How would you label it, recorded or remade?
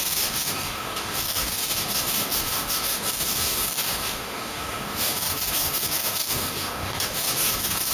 remade